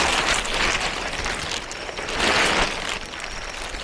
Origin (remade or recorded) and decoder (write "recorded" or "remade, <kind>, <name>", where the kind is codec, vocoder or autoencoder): recorded